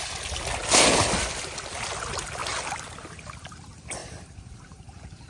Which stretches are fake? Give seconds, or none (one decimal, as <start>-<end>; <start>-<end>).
4.0-5.3

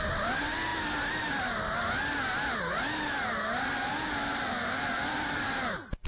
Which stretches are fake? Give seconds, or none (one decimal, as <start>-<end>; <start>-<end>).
4.3-5.4

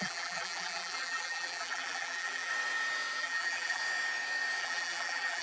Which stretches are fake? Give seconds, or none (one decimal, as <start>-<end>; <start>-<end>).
0.0-2.5; 3.2-3.8; 4.6-5.4